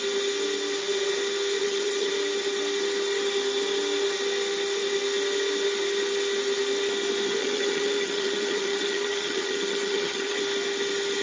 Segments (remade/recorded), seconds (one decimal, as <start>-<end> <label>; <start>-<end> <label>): 0.0-1.6 recorded; 1.6-2.1 remade; 2.1-7.4 recorded; 7.4-10.4 remade; 10.4-11.2 recorded